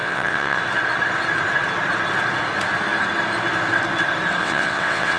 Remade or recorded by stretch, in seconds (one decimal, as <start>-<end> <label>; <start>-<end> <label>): 0.0-0.6 remade; 0.6-4.4 recorded; 4.4-5.2 remade

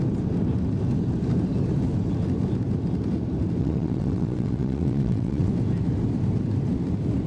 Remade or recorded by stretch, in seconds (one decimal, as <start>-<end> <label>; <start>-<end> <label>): 0.0-3.6 recorded; 3.6-5.5 remade; 5.5-7.3 recorded

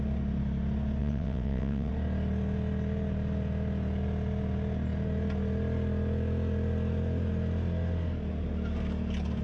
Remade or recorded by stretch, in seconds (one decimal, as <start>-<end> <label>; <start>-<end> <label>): 0.0-1.0 recorded; 1.0-1.9 remade; 1.9-9.4 recorded

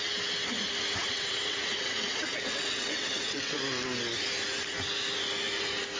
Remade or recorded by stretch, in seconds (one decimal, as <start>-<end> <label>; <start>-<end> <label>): 0.0-1.0 recorded; 1.0-3.6 remade; 3.6-6.0 recorded